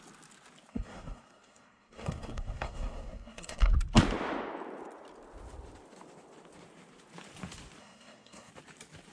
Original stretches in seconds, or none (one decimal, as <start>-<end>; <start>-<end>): 0.0-0.7; 3.7-7.8; 8.5-9.1